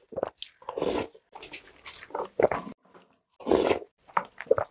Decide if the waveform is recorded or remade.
recorded